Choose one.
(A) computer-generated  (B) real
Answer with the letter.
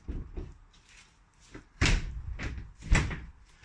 B